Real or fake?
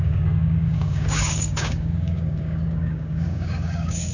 fake